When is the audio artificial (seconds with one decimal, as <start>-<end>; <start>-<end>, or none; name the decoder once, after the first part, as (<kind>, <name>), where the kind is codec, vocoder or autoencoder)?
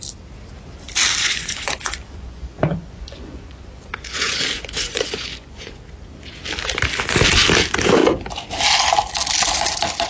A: 1.2-5.8 (vocoder, Vocos)